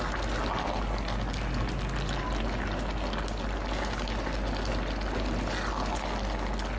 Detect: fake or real real